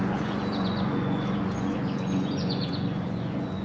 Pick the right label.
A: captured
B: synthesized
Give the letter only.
B